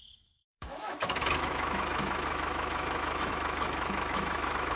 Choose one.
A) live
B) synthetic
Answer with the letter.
B